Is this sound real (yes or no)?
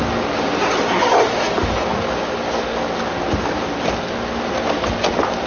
yes